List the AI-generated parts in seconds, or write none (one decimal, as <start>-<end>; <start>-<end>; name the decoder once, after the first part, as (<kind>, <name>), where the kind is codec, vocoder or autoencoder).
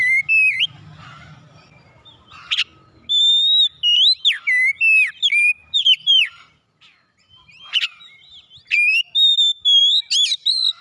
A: 5.6-8.0 (vocoder, BigVGAN v2)